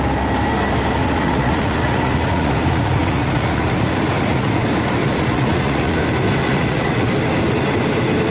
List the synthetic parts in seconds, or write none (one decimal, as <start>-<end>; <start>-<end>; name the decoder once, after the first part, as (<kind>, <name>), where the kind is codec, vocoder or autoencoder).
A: 1.0-4.6 (vocoder, Vocos); 5.0-6.0; 6.4-7.1